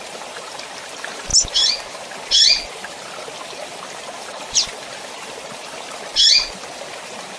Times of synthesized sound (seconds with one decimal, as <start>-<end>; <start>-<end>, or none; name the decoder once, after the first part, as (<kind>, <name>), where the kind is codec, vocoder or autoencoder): none